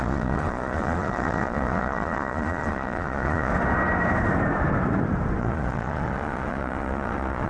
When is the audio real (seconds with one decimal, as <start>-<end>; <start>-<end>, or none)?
3.5-5.4